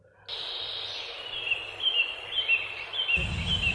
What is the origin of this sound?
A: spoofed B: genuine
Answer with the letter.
B